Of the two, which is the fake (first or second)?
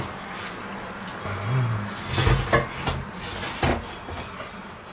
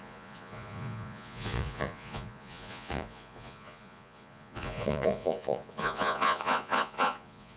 second